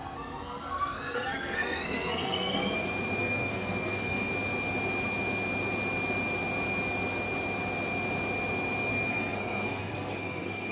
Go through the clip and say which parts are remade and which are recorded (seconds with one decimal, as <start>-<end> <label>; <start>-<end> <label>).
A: 0.0-2.6 remade; 2.6-3.2 recorded; 3.2-4.3 remade; 4.3-8.9 recorded; 8.9-10.7 remade